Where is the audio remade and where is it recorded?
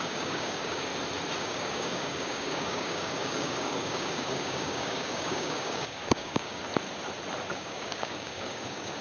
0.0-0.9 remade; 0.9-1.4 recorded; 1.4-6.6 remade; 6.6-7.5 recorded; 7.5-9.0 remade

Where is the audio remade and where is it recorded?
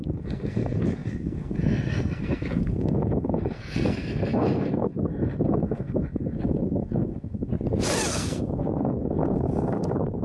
0.0-7.5 remade; 7.5-8.1 recorded; 8.1-10.2 remade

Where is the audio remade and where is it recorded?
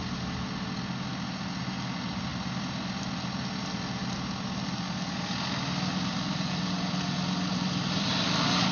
0.0-8.7 recorded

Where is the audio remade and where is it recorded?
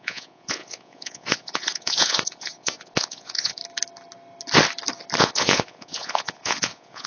0.0-3.6 remade; 3.6-5.2 recorded; 5.2-7.1 remade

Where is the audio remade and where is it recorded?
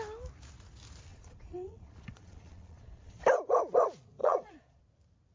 0.0-1.1 recorded; 1.1-3.2 remade; 3.2-4.2 recorded; 4.2-4.8 remade; 4.8-5.3 recorded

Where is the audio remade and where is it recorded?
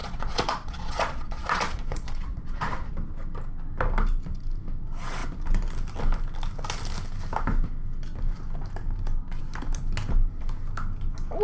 0.0-2.9 remade; 2.9-11.4 recorded